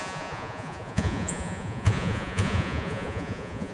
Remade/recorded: remade